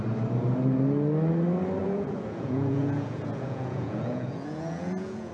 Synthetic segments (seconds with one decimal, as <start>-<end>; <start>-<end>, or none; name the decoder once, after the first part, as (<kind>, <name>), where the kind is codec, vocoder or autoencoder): 1.8-5.3 (vocoder, Vocos)